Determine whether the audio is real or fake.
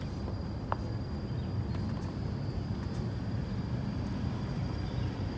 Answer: fake